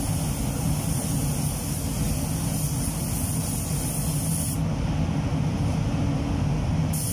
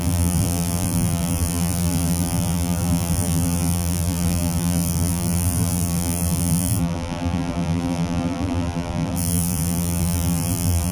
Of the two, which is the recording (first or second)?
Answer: first